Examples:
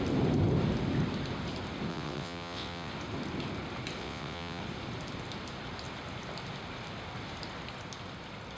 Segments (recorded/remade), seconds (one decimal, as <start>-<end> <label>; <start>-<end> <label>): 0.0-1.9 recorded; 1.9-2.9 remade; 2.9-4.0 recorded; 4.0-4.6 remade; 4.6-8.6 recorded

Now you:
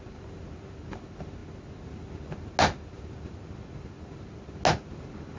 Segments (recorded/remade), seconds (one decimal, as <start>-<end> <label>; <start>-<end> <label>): 0.0-5.4 recorded

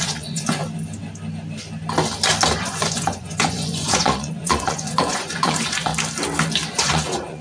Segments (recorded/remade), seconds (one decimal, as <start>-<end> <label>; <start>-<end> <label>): 0.0-0.6 remade; 0.6-2.6 recorded; 2.6-5.9 remade; 5.9-6.7 recorded; 6.7-7.4 remade